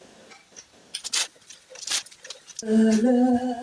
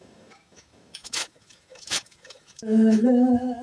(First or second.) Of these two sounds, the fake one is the second